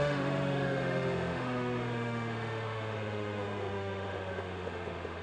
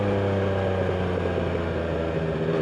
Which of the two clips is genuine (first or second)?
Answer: second